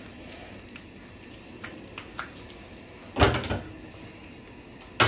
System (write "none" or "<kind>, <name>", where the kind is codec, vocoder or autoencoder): none